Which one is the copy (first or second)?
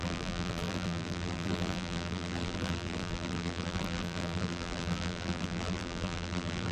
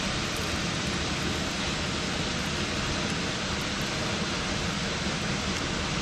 first